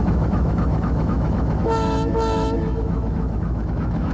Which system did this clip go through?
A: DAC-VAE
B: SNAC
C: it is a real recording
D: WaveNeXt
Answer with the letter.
A